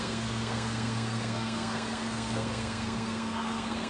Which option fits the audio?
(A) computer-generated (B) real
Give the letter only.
A